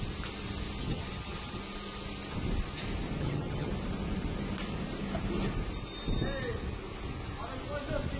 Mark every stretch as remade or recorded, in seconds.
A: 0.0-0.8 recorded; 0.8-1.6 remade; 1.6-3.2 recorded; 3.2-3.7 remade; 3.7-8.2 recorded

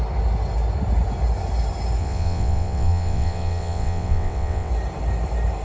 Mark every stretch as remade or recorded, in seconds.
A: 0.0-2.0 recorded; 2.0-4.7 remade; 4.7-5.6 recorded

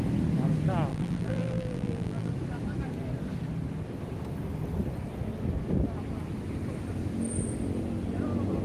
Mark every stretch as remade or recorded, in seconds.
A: 0.0-0.9 recorded; 0.9-2.3 remade; 2.3-8.6 recorded

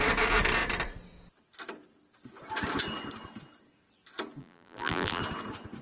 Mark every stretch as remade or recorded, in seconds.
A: 0.0-4.4 recorded; 4.4-5.2 remade; 5.2-5.8 recorded

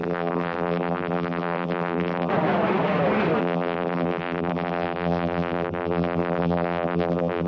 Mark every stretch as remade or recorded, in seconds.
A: 0.0-2.3 remade; 2.3-3.4 recorded; 3.4-7.5 remade

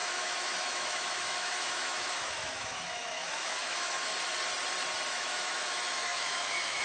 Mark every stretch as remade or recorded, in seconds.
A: 0.0-4.1 remade; 4.1-5.1 recorded; 5.1-6.8 remade